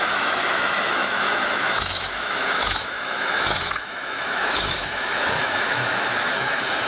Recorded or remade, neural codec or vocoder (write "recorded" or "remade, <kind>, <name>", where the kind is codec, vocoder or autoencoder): remade, autoencoder, DAC-VAE